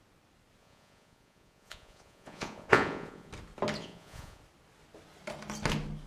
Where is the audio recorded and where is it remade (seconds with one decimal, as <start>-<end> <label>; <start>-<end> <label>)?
0.0-0.6 recorded; 0.6-3.3 remade; 3.3-3.8 recorded; 3.8-4.4 remade; 4.4-6.1 recorded